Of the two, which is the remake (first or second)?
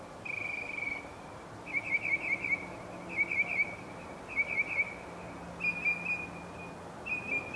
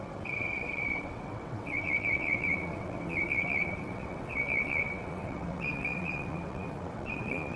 second